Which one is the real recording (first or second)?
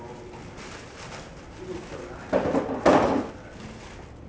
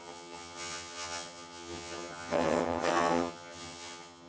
first